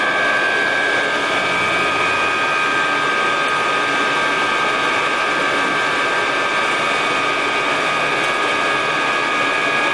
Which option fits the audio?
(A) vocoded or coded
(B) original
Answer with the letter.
B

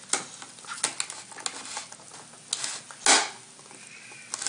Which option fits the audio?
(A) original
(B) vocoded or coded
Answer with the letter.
A